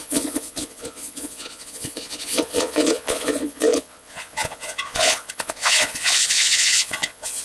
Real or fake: fake